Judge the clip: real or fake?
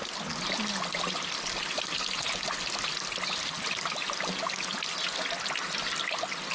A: real